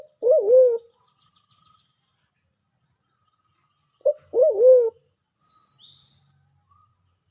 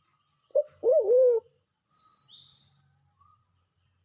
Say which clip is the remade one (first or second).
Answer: second